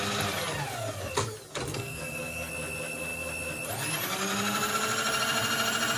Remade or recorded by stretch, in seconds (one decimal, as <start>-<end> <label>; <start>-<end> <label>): 0.0-1.7 recorded; 1.7-2.5 remade; 2.5-6.0 recorded